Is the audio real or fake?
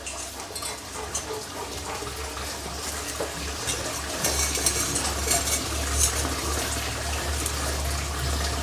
real